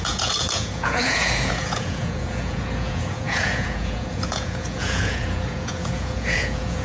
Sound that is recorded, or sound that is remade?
remade